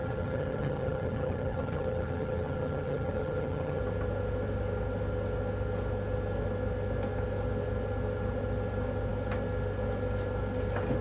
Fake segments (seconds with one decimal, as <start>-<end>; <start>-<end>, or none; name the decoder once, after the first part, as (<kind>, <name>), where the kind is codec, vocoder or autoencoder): 0.0-3.8 (vocoder, HiFi-GAN)